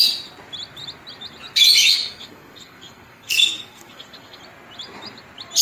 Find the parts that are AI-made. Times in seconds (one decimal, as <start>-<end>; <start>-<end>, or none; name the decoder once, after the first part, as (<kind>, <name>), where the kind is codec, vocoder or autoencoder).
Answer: 1.9-4.4 (codec, SNAC)